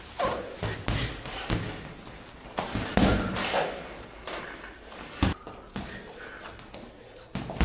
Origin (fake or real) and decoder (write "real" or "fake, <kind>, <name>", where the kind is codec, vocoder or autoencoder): real